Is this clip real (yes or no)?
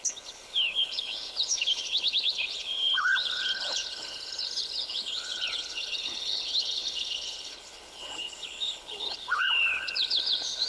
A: no